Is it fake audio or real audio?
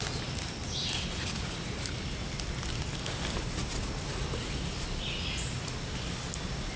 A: real